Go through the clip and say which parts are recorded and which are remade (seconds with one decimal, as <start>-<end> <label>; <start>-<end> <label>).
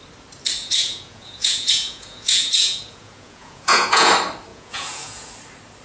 0.0-0.6 recorded; 0.6-4.1 remade; 4.1-4.5 recorded; 4.5-5.3 remade; 5.3-5.8 recorded